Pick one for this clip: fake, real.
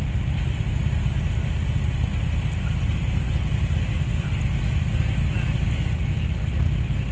real